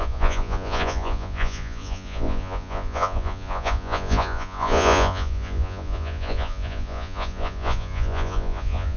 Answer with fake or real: fake